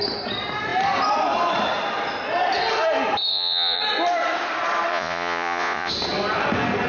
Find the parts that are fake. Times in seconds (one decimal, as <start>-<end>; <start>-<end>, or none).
3.3-3.8; 4.9-5.9